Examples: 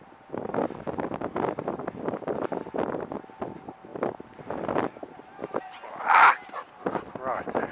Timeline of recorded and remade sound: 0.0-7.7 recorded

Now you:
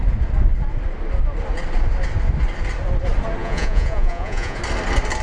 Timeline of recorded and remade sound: 0.0-3.4 recorded; 3.4-4.6 remade; 4.6-5.2 recorded